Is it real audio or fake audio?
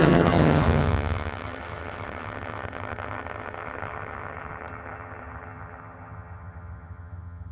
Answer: fake